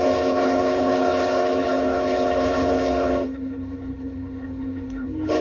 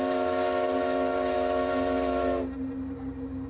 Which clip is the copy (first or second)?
first